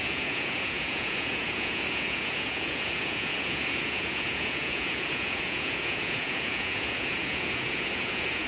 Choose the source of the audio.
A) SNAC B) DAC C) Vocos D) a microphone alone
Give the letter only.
C